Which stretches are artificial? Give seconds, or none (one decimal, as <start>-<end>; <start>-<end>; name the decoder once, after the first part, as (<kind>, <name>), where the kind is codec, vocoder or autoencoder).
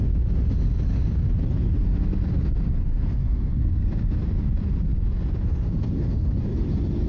2.9-3.8 (codec, SNAC)